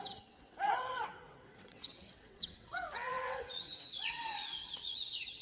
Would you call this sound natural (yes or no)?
no